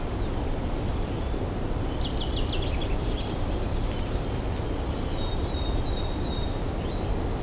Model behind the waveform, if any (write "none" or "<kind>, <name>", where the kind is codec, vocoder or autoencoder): none